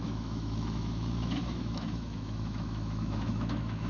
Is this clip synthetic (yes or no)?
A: yes